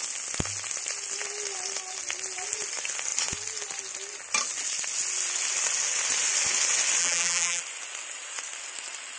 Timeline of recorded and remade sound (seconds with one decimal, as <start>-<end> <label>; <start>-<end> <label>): 0.0-7.0 recorded; 7.0-7.6 remade; 7.6-9.2 recorded